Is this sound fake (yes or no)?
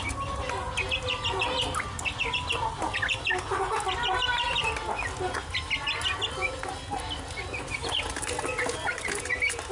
no